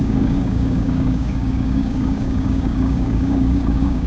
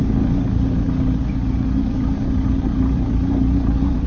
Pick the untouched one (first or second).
second